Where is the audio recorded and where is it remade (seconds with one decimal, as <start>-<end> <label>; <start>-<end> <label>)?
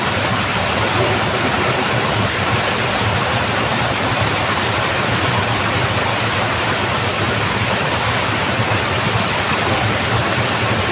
0.0-10.9 recorded